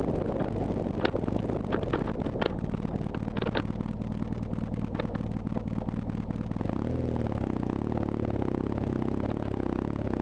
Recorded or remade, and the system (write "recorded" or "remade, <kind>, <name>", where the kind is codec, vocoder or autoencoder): recorded